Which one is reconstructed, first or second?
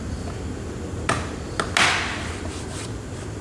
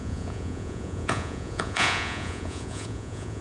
second